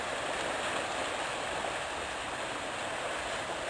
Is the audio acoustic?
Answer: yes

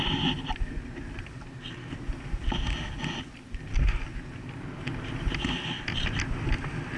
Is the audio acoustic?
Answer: yes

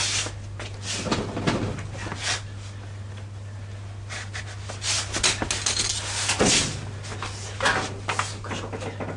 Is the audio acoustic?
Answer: yes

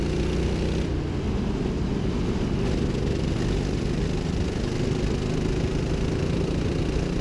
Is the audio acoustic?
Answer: yes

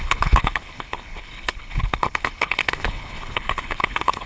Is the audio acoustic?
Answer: no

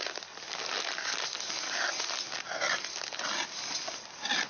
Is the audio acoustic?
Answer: yes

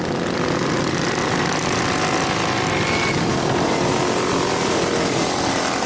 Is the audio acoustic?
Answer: yes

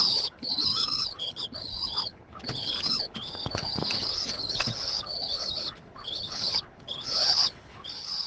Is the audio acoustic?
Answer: no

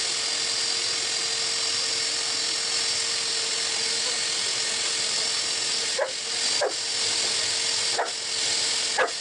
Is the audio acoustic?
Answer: yes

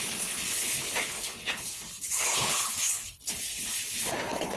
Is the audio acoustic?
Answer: no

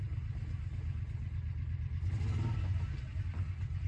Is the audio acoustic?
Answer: yes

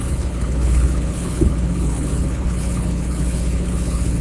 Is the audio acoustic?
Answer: no